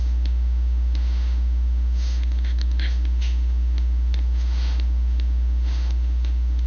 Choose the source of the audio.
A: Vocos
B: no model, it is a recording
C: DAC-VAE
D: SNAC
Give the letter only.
C